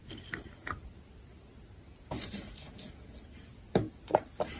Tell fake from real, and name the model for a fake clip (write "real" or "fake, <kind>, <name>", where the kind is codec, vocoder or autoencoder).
real